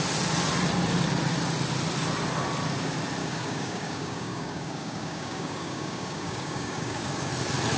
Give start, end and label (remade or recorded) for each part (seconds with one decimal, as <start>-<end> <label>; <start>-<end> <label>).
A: 0.0-3.2 recorded; 3.2-7.3 remade; 7.3-7.8 recorded